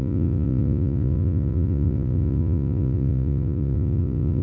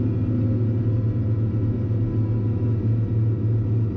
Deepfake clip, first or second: first